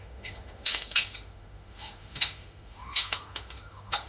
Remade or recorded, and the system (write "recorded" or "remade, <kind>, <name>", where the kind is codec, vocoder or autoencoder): remade, autoencoder, DAC-VAE